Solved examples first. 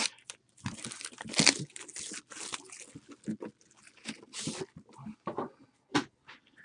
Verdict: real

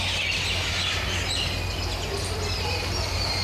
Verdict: real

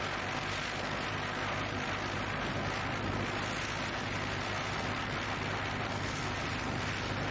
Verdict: real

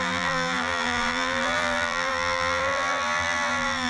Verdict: fake